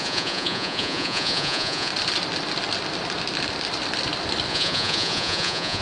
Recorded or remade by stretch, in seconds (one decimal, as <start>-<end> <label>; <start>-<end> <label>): 0.0-1.9 remade; 1.9-4.5 recorded; 4.5-5.8 remade